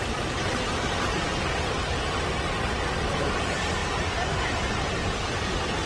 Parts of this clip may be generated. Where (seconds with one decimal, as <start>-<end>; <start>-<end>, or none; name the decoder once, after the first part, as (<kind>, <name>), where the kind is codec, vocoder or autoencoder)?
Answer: none